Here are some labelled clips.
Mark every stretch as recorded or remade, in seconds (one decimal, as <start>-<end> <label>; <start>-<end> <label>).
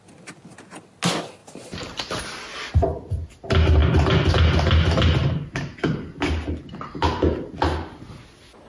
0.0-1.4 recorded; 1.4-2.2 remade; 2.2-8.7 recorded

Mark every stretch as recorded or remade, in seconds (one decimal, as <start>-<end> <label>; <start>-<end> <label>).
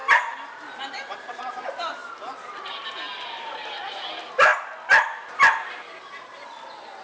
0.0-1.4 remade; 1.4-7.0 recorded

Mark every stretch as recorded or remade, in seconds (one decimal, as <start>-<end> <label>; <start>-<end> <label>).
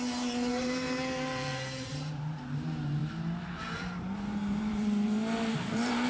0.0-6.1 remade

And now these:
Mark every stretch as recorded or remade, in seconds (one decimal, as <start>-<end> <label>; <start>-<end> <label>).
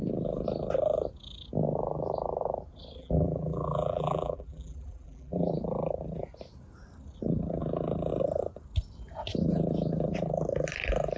0.0-3.0 recorded; 3.0-5.5 remade; 5.5-11.2 recorded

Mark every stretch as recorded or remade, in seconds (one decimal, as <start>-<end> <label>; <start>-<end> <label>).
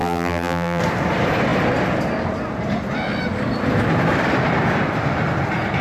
0.0-0.8 remade; 0.8-5.8 recorded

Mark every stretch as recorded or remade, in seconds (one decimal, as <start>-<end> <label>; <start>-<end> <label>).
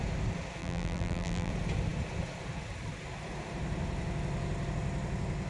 0.0-0.6 recorded; 0.6-1.5 remade; 1.5-5.5 recorded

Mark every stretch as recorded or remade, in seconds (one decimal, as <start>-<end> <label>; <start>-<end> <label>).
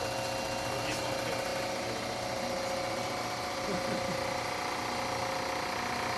0.0-6.2 recorded